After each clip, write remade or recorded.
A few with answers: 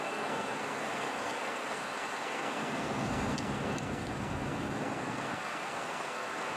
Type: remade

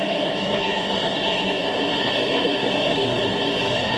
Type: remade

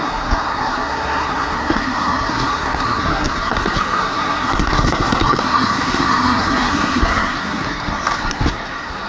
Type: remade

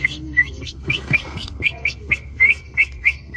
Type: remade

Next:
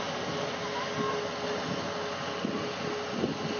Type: recorded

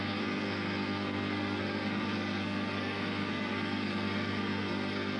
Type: remade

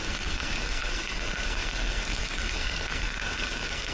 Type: remade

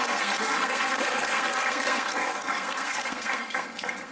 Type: remade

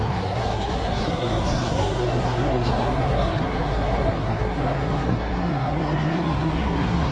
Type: remade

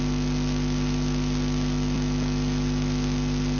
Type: recorded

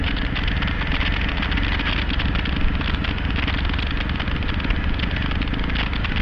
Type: recorded